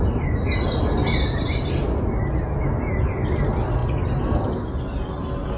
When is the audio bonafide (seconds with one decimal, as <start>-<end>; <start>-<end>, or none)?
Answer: 0.0-5.6